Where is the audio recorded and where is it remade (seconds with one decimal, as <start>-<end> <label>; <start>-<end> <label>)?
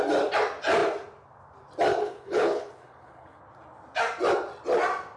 0.0-2.0 recorded; 2.0-3.4 remade; 3.4-5.2 recorded